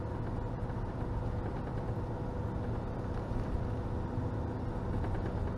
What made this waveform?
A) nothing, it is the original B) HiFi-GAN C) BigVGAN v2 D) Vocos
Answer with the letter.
A